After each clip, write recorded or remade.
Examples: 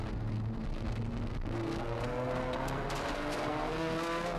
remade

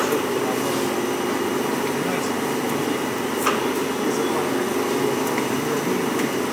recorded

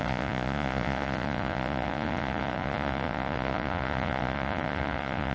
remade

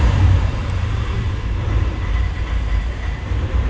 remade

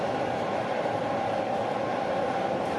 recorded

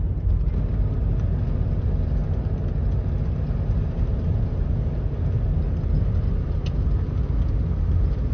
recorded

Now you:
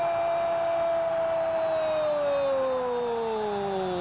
recorded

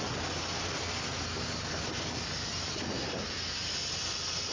recorded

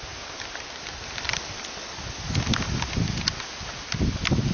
recorded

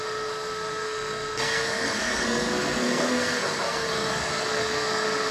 remade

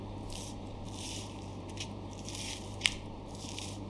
remade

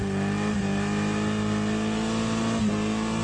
recorded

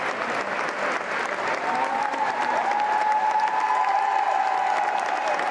recorded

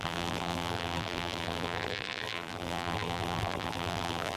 remade